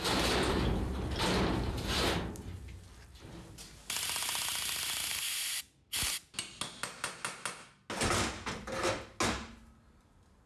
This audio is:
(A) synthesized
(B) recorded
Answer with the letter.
B